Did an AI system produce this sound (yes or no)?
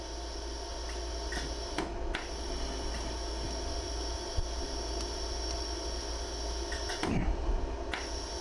no